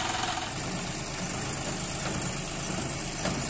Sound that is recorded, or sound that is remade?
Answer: recorded